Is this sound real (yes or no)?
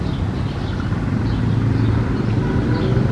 yes